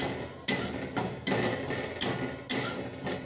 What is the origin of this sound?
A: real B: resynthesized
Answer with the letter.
A